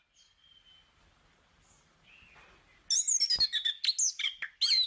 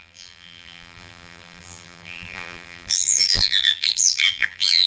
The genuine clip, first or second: first